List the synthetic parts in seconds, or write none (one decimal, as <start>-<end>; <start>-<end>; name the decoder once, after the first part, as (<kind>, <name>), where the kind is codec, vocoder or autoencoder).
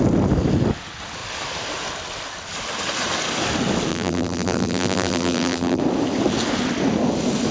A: 3.9-5.8 (vocoder, BigVGAN v2)